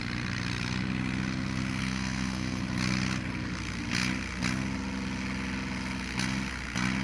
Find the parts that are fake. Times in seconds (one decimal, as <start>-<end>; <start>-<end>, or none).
1.8-2.6